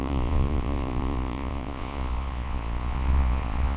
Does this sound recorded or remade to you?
remade